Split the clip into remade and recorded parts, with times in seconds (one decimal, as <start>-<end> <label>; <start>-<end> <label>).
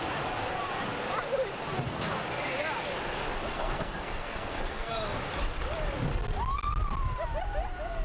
0.0-3.5 recorded; 3.5-4.9 remade; 4.9-8.0 recorded